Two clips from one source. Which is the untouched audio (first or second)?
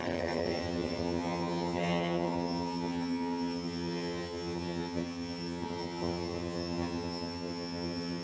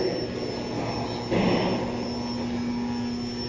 second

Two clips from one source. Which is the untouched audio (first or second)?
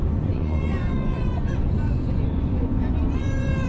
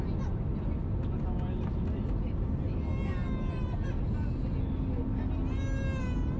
second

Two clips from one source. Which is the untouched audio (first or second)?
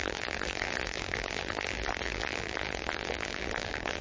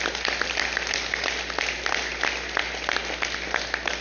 second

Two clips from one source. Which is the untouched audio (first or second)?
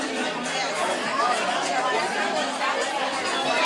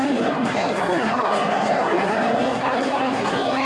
first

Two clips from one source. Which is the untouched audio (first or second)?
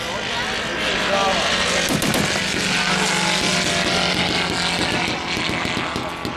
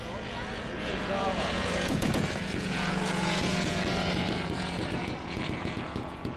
first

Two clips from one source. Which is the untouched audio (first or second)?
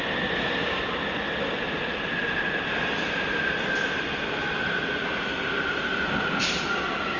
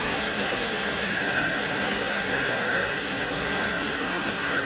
first